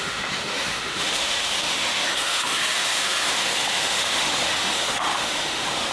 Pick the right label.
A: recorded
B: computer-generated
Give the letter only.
B